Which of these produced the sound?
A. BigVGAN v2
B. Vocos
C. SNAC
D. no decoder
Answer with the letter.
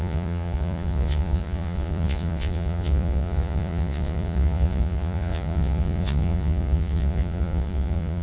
B